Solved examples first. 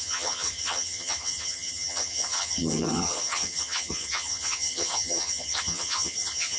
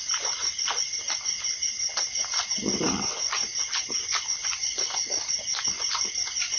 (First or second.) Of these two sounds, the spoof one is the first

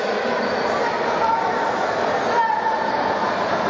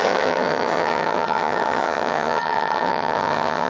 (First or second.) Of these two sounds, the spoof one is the second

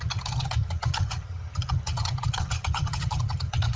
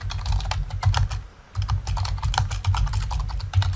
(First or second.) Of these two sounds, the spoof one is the first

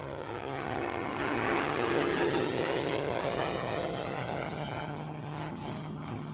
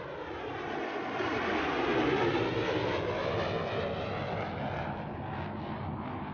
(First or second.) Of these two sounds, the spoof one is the first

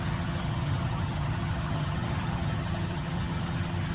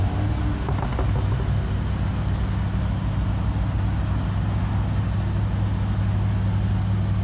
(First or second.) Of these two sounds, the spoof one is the first